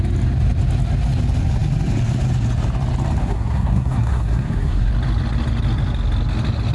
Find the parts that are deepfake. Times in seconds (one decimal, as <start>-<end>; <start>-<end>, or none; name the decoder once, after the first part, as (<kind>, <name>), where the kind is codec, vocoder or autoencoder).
3.2-4.9 (codec, SNAC)